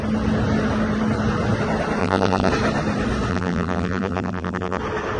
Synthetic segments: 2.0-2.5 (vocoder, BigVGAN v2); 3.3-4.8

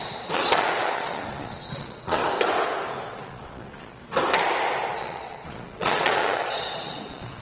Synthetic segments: 0.0-2.2 (vocoder, Vocos); 3.1-4.0; 4.9-7.4

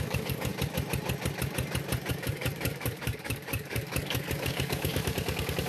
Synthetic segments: 0.0-0.5 (codec, DAC); 2.1-5.7

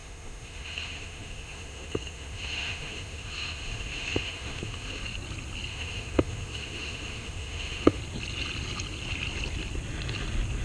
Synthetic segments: 0.0-5.0 (autoencoder, DAC-VAE); 5.7-8.0

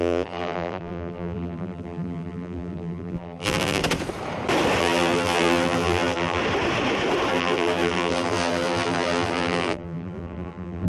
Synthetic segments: 0.0-3.8 (vocoder, BigVGAN v2); 4.8-6.4; 7.3-10.9